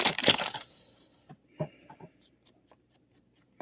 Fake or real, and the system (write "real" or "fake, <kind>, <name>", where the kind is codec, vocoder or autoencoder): fake, vocoder, BigVGAN v2